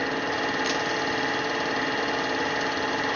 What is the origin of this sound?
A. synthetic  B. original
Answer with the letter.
B